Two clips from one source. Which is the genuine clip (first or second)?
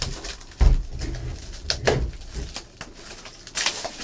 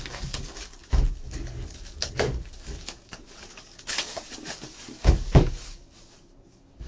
first